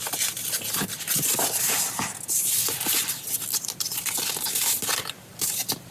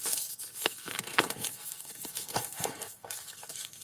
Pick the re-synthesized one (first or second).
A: second